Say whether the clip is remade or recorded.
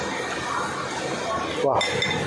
recorded